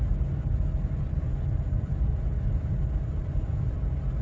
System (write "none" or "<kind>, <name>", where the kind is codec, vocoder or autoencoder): none